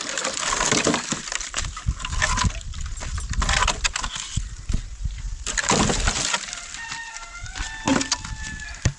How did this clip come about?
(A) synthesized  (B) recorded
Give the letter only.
B